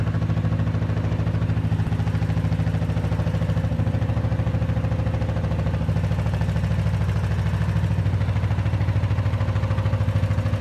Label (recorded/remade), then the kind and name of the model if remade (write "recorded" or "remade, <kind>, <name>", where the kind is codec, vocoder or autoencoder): recorded